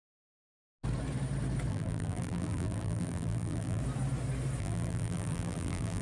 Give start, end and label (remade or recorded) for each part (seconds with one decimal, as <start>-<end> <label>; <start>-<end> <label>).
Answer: 0.0-0.4 remade; 0.4-1.7 recorded; 1.7-3.8 remade; 3.8-4.6 recorded; 4.6-6.0 remade